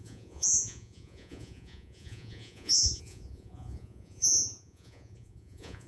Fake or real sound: fake